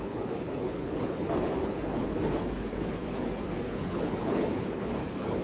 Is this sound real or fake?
fake